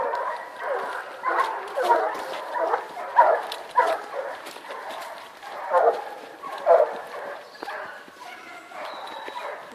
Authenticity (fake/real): real